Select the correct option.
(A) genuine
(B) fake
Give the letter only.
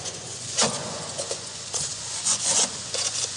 B